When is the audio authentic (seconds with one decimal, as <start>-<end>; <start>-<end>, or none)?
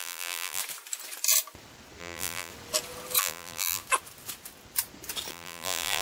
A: 0.6-2.0; 2.5-3.2; 3.8-5.3